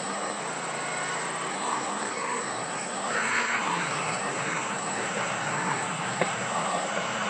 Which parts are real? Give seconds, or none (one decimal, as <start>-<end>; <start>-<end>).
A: 0.4-1.5